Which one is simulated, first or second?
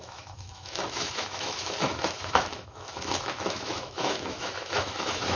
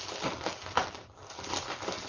first